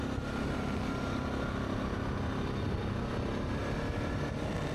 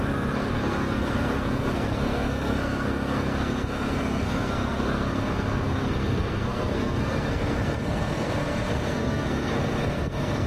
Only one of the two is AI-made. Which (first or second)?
second